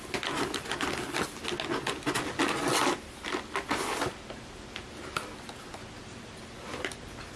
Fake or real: real